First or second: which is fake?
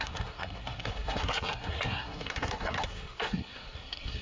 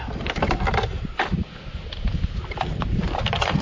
first